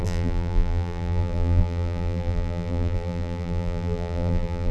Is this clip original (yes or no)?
no